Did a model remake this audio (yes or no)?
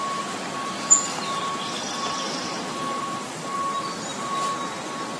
yes